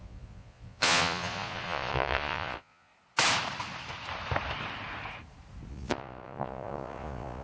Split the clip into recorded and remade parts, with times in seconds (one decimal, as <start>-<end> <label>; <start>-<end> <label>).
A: 0.0-2.9 remade; 2.9-5.7 recorded; 5.7-7.4 remade